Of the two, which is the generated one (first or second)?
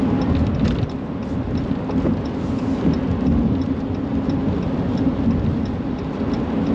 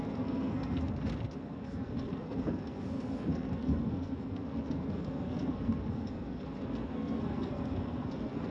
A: second